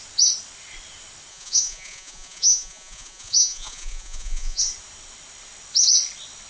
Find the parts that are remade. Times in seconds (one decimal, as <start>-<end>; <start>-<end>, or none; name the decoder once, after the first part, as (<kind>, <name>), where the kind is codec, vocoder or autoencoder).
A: 1.3-4.6 (vocoder, Vocos)